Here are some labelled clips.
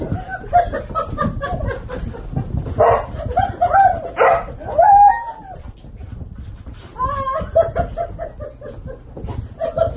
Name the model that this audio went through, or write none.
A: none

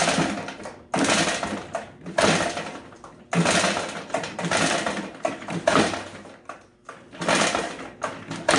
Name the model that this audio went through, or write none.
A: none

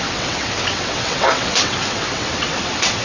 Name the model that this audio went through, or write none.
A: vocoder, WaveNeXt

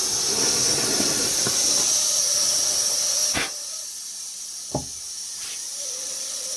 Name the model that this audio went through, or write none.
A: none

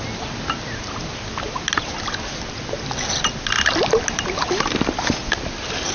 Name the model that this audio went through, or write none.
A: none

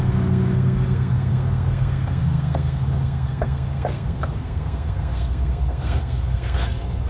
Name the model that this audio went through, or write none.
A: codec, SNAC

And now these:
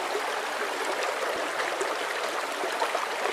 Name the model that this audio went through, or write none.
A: none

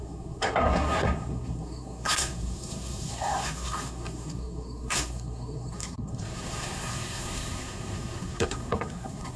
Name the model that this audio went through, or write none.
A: codec, SNAC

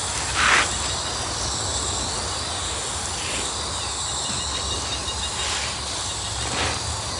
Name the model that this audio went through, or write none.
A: none